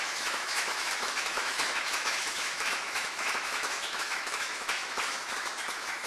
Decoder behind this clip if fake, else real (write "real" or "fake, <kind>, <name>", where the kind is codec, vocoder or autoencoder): fake, autoencoder, DAC-VAE